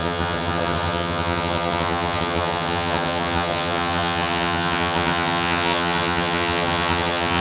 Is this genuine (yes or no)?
no